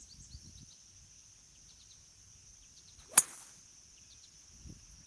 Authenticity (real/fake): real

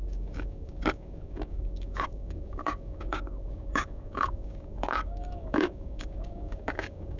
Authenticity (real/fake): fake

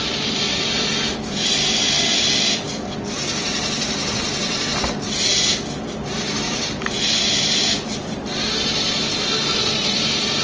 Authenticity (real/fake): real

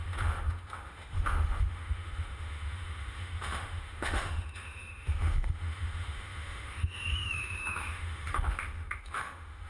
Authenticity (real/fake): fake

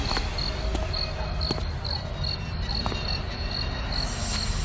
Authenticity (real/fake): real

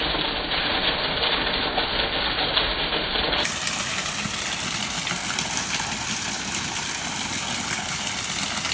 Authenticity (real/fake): real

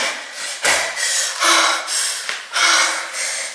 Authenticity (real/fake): real